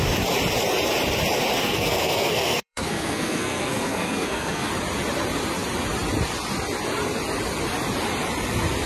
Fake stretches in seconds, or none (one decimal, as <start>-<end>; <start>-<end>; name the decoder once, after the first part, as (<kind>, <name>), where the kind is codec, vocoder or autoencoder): 1.6-4.7 (codec, SNAC)